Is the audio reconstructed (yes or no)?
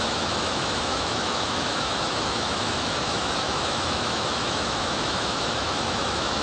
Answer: yes